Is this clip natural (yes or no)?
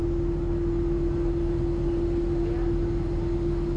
yes